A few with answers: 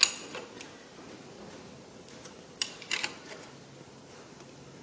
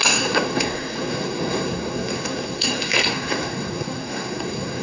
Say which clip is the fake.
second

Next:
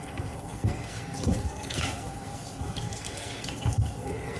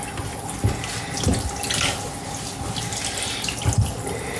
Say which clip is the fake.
first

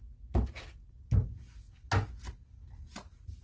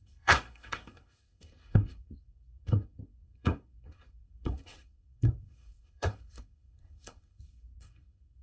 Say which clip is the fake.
second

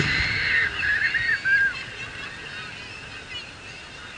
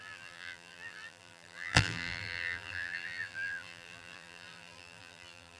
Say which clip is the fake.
second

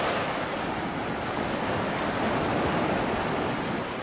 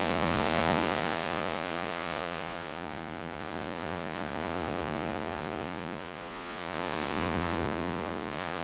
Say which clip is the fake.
second